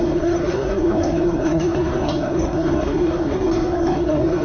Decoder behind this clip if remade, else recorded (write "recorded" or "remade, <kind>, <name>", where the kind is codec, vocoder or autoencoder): remade, codec, SNAC